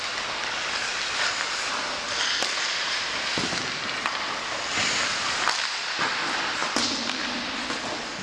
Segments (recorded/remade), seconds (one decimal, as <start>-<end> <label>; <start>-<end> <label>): 0.0-6.6 recorded; 6.6-7.5 remade; 7.5-8.2 recorded